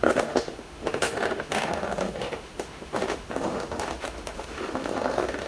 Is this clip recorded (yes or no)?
no